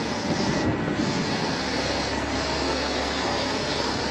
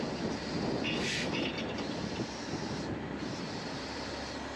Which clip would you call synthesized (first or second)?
first